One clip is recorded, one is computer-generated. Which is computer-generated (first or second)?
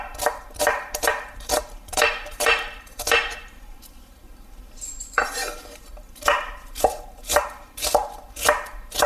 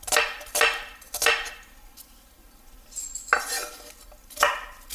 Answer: first